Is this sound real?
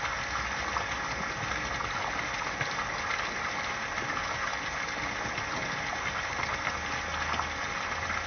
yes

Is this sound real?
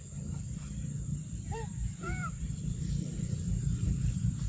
no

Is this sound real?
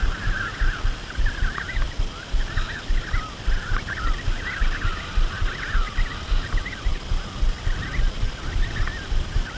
yes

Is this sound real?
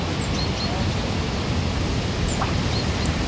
yes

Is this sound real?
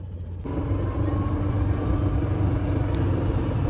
yes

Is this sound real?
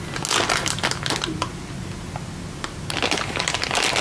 yes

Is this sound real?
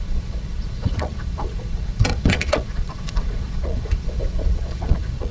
no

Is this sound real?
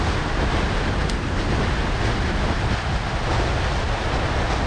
yes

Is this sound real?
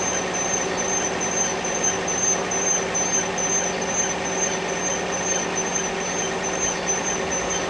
yes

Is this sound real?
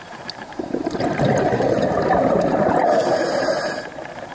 no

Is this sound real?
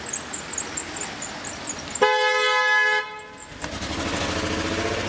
yes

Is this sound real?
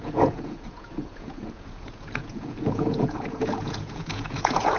no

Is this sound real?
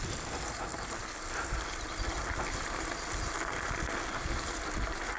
yes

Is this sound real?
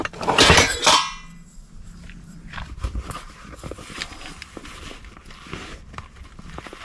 yes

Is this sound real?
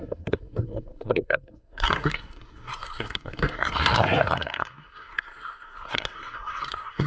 no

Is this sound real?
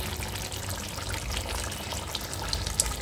yes